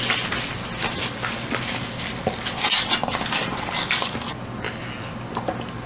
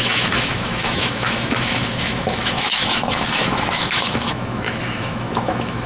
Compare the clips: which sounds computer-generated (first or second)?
second